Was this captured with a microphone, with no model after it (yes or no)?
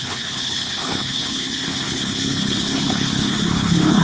no